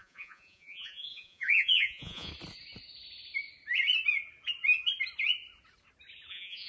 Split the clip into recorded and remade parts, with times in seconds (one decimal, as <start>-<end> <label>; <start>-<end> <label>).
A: 0.0-2.3 remade; 2.3-6.3 recorded; 6.3-6.7 remade